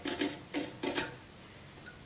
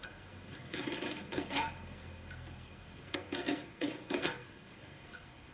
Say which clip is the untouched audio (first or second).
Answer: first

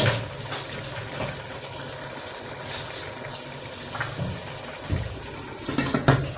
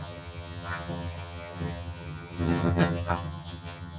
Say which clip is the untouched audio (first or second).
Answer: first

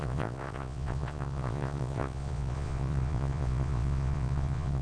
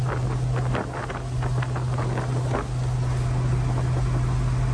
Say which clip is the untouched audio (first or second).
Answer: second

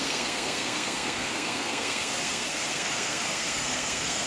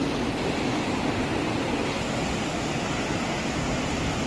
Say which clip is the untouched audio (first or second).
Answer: second